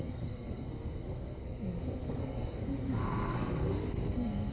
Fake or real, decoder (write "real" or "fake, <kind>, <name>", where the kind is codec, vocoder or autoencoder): fake, codec, SNAC